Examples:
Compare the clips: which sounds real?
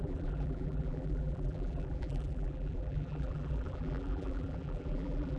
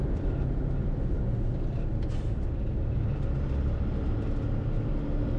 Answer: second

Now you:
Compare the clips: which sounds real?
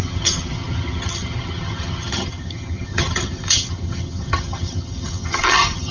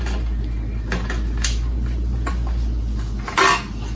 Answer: second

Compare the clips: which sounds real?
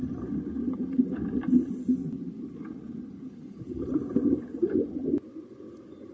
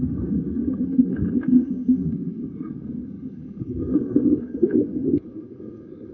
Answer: first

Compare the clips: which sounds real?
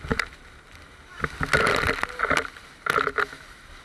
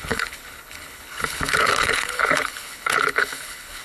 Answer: first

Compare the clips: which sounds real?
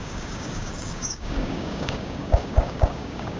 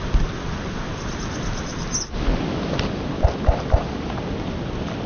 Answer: second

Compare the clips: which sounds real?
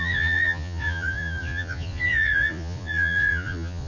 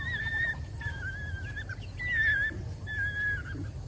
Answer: second